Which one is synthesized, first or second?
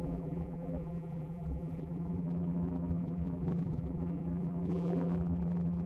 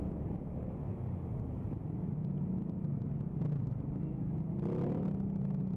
first